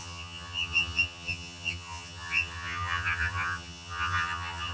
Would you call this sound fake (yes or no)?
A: yes